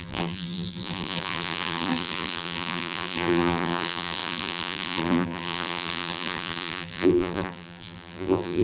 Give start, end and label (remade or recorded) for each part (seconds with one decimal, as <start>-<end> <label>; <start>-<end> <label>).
0.0-8.6 remade